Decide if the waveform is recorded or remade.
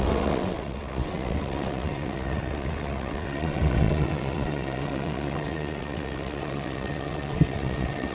remade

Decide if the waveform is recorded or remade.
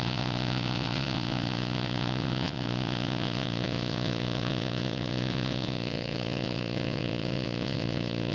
remade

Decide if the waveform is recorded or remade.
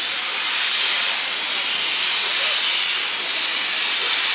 recorded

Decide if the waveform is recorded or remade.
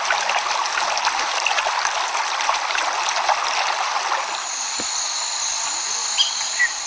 recorded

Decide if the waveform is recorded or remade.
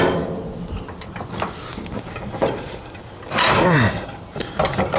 recorded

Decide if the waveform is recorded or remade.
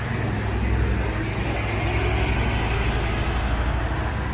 recorded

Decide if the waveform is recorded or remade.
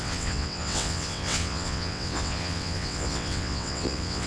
remade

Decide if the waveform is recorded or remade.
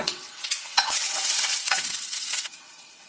remade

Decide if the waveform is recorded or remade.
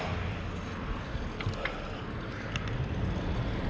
recorded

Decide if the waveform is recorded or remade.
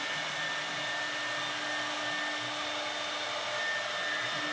recorded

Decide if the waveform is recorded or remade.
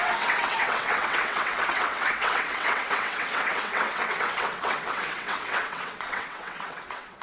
remade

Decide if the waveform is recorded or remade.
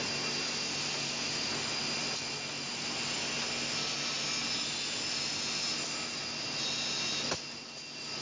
recorded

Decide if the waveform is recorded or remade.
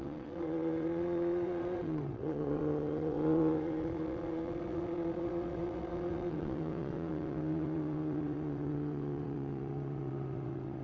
remade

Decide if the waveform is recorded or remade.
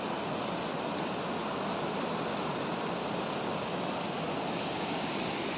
recorded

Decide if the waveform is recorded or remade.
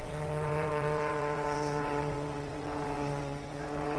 remade